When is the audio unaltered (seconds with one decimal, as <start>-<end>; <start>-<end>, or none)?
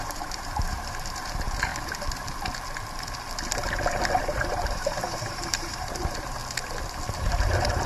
1.7-4.2; 6.4-7.1